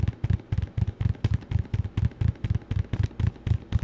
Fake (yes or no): no